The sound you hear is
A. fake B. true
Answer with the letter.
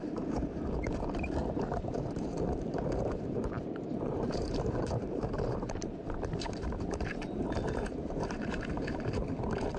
A